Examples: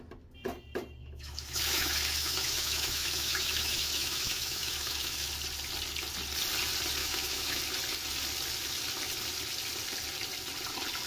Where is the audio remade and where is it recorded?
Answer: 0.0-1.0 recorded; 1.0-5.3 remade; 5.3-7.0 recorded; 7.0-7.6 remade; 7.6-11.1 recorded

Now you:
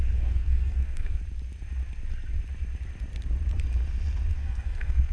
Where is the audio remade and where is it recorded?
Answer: 0.0-1.2 remade; 1.2-4.3 recorded; 4.3-5.1 remade

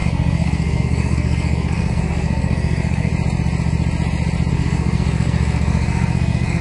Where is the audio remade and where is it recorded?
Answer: 0.0-3.1 remade; 3.1-4.5 recorded; 4.5-6.6 remade

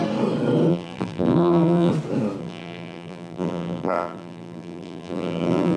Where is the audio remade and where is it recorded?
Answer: 0.0-0.7 recorded; 0.7-1.9 remade; 1.9-2.4 recorded; 2.4-5.8 remade

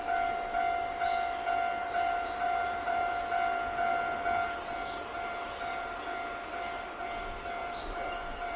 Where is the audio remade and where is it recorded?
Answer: 0.0-1.8 recorded; 1.8-3.2 remade; 3.2-7.6 recorded; 7.6-8.6 remade

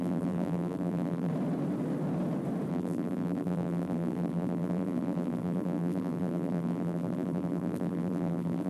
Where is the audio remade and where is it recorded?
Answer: 0.0-1.3 remade; 1.3-2.7 recorded; 2.7-8.7 remade

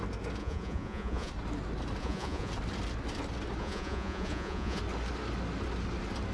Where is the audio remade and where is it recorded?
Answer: 0.0-0.4 recorded; 0.4-1.3 remade; 1.3-2.0 recorded; 2.0-2.5 remade; 2.5-3.6 recorded; 3.6-4.8 remade; 4.8-6.3 recorded